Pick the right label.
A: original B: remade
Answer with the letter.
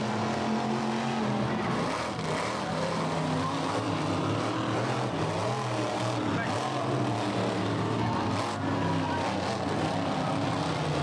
A